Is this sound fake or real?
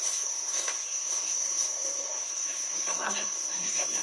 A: fake